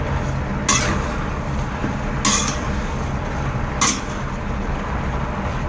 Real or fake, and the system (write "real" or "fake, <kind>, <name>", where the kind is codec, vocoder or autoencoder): real